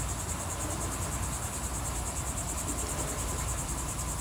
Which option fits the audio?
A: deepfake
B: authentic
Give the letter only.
B